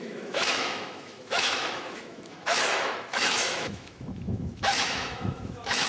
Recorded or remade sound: remade